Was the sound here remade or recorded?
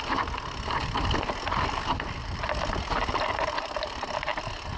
recorded